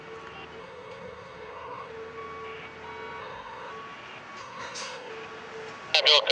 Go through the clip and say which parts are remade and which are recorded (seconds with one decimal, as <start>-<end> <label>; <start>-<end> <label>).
0.0-0.6 recorded; 0.6-1.9 remade; 1.9-3.2 recorded; 3.2-3.7 remade; 3.7-4.4 recorded; 4.4-5.1 remade; 5.1-6.3 recorded

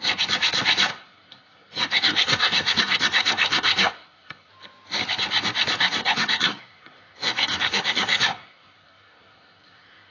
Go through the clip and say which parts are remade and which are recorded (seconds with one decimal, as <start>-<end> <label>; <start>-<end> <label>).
0.0-0.9 recorded; 0.9-4.5 remade; 4.5-6.0 recorded; 6.0-10.1 remade

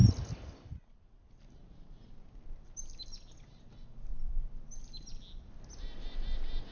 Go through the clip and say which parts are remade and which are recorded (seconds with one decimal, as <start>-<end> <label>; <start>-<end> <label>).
0.0-6.7 recorded

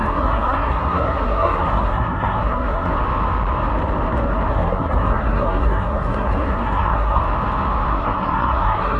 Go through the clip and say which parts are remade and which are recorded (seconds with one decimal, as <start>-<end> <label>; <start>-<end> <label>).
0.0-2.9 remade; 2.9-4.5 recorded; 4.5-7.2 remade; 7.2-7.9 recorded; 7.9-9.0 remade

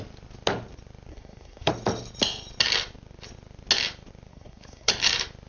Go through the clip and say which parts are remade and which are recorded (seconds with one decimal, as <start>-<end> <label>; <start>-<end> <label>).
0.0-1.1 recorded; 1.1-1.7 remade; 1.7-4.3 recorded; 4.3-4.9 remade; 4.9-5.5 recorded

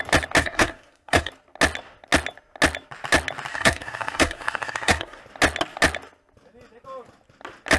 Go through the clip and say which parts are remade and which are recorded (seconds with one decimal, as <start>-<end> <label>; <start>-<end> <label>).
0.0-0.4 recorded; 0.4-1.3 remade; 1.3-3.5 recorded; 3.5-5.2 remade; 5.2-7.8 recorded

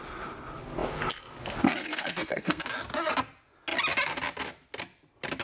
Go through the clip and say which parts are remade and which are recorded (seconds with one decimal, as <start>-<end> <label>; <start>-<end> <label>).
0.0-1.8 recorded; 1.8-2.6 remade; 2.6-5.4 recorded

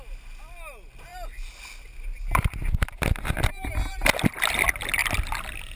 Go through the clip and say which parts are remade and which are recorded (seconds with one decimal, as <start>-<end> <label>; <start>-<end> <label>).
0.0-5.8 recorded